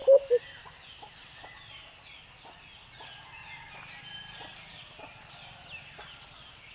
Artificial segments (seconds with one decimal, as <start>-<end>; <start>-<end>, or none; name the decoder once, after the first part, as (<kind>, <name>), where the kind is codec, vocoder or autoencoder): none